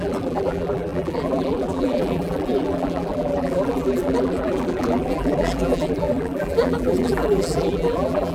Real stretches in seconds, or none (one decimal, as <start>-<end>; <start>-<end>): none